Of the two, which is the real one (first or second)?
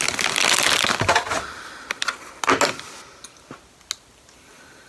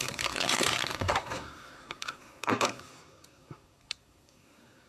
first